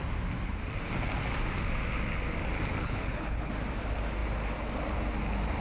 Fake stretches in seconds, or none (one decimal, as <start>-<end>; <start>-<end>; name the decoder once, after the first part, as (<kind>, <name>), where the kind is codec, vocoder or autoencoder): 2.8-3.5 (codec, HILCodec)